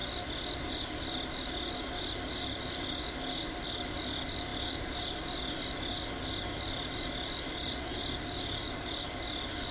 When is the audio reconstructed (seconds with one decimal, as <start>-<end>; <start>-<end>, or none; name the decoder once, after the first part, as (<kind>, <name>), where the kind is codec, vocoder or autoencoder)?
4.5-9.7 (vocoder, BigVGAN v2)